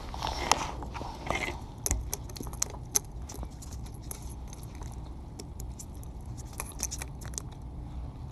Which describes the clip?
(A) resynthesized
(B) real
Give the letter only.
B